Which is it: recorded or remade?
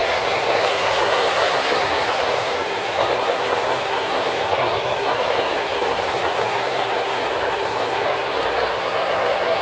remade